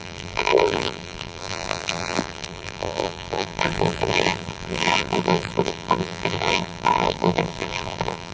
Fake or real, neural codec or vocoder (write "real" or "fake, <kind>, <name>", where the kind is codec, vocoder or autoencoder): fake, vocoder, BigVGAN v2